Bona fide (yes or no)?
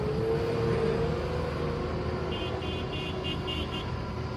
yes